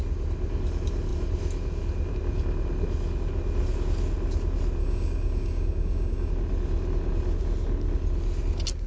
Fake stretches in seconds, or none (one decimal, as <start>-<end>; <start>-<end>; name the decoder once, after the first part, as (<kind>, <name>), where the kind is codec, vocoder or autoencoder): 4.8-6.3 (codec, DAC)